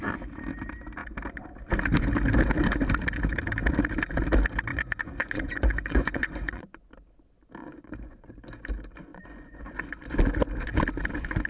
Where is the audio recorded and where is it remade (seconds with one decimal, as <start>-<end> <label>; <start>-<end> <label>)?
0.0-4.7 recorded; 4.7-6.9 remade; 6.9-7.6 recorded; 7.6-8.3 remade; 8.3-9.1 recorded; 9.1-9.8 remade; 9.8-11.5 recorded